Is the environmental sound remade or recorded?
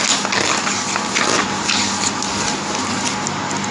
recorded